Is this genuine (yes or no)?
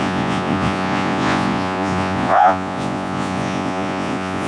no